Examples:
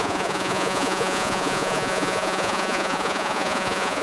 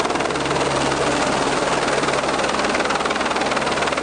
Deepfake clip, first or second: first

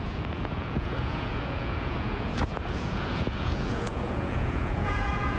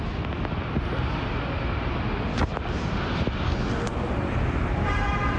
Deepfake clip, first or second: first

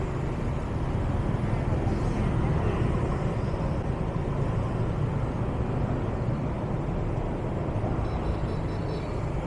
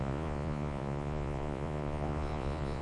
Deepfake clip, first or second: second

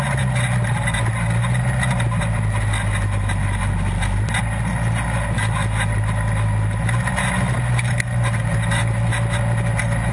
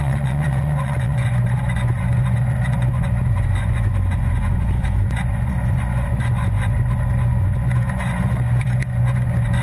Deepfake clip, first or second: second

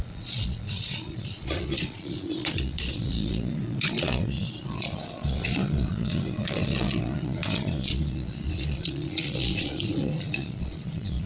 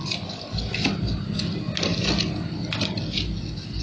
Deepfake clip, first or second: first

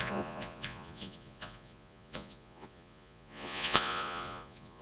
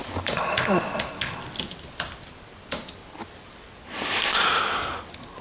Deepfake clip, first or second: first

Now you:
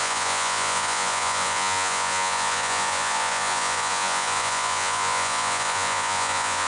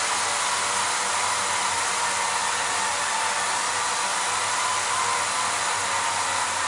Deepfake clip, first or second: first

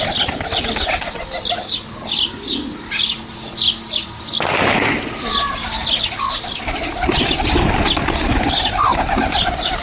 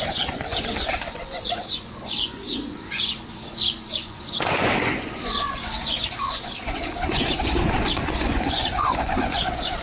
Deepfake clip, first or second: second